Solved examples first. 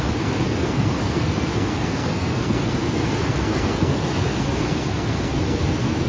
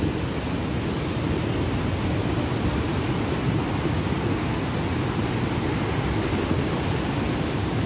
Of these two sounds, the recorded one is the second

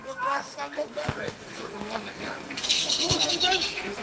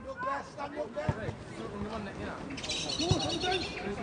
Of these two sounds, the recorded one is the second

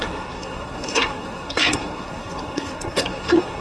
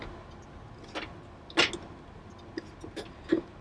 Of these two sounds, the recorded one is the second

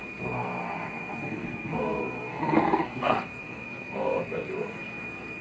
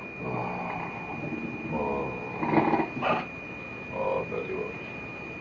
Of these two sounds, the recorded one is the second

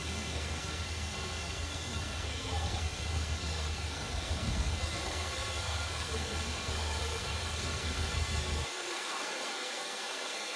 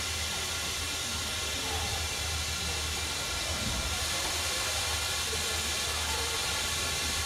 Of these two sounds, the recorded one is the second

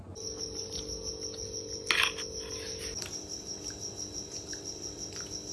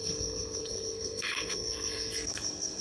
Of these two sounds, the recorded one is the first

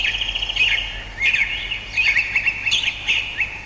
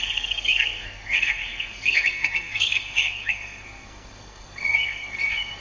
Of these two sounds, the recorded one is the first